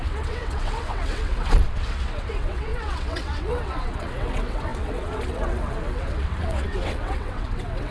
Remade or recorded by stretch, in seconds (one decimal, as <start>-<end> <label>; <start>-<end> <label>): 0.0-7.9 remade